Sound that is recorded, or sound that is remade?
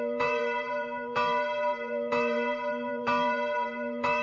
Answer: remade